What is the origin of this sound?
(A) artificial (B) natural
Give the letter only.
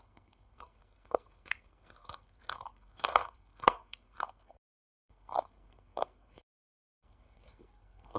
A